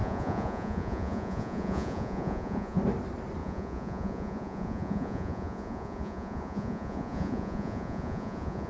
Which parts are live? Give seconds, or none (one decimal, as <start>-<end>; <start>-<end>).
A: 2.8-3.4